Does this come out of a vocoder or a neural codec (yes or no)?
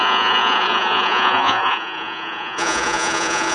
yes